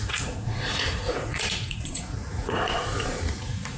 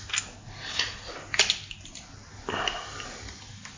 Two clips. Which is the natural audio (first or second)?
second